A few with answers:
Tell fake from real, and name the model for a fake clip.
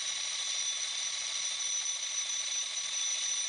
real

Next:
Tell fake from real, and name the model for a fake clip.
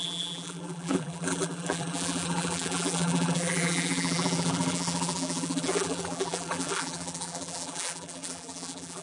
fake, vocoder, BigVGAN v2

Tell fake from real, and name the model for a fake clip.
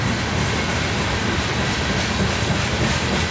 real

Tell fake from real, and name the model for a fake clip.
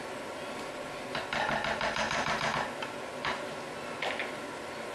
real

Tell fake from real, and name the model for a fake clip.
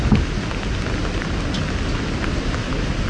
real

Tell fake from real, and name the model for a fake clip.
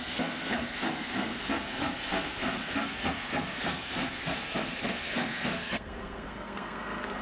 fake, codec, SNAC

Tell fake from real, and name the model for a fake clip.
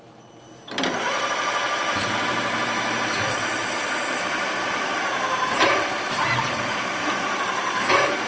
fake, vocoder, BigVGAN v2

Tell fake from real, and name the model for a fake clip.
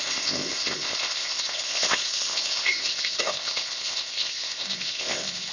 fake, codec, ZipCodec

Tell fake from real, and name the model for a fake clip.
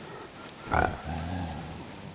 real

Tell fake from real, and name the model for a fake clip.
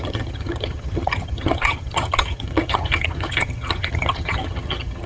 fake, vocoder, HiFi-GAN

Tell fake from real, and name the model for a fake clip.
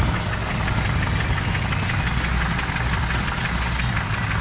real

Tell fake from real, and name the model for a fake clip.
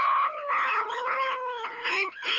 fake, codec, HILCodec